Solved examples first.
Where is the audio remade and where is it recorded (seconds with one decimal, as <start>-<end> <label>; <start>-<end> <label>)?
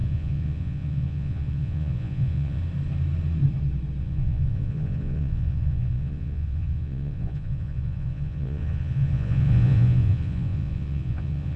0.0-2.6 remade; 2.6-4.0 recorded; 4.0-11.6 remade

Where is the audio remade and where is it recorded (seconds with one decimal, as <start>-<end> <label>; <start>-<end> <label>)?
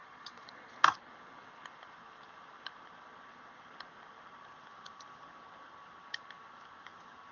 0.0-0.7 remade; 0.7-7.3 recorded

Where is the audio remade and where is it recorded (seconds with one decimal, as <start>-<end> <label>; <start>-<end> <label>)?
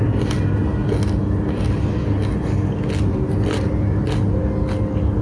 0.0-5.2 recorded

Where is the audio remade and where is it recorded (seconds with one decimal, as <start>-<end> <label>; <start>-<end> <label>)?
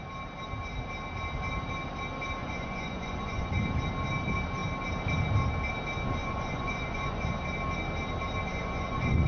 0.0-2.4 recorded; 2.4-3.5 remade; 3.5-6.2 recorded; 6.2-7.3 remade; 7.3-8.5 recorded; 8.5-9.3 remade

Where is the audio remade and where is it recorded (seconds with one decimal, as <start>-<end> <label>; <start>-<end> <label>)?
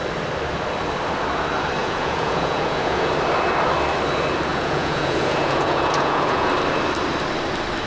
0.0-1.8 recorded; 1.8-3.1 remade; 3.1-4.5 recorded; 4.5-6.5 remade; 6.5-7.9 recorded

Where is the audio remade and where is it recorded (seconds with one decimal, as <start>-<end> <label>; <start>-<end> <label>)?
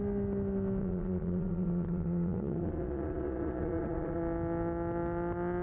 0.0-0.8 recorded; 0.8-4.2 remade; 4.2-5.6 recorded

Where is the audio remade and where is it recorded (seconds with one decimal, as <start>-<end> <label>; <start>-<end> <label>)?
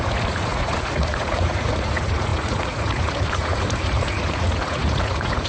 0.0-5.5 remade